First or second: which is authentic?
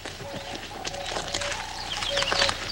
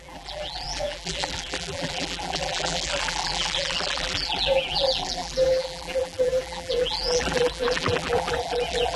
first